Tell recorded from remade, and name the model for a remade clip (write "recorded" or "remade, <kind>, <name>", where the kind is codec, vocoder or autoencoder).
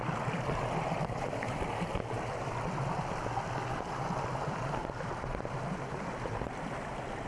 recorded